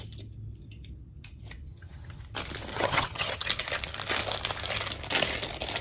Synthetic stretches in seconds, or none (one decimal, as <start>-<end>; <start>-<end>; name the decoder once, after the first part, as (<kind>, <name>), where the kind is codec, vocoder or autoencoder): 1.7-2.2 (vocoder, HiFi-GAN); 2.7-3.5